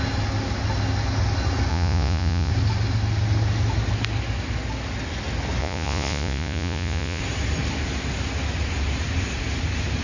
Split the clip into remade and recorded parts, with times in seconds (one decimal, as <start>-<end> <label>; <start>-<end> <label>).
0.0-1.7 recorded; 1.7-2.5 remade; 2.5-5.6 recorded; 5.6-7.2 remade; 7.2-10.0 recorded